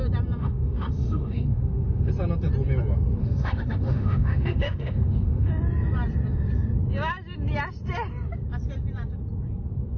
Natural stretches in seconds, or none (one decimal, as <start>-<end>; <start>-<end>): 0.0-0.4; 2.1-3.2; 5.5-10.0